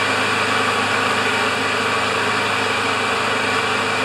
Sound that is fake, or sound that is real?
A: real